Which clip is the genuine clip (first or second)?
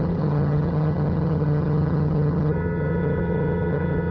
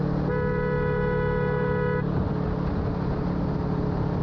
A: second